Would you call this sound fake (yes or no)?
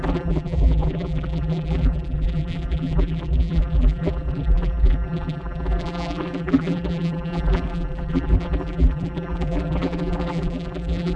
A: yes